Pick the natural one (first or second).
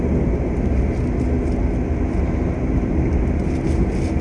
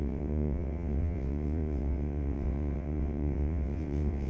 first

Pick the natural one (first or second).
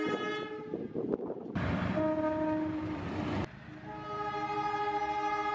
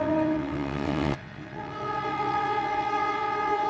first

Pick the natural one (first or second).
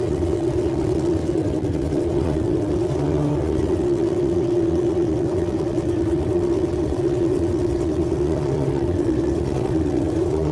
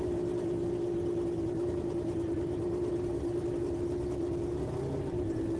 second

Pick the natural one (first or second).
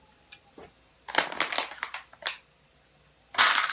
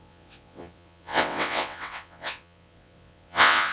first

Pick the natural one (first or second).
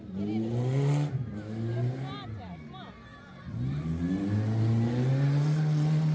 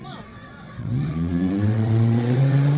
first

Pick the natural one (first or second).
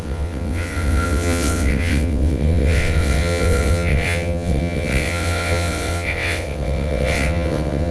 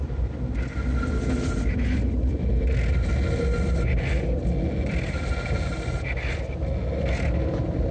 second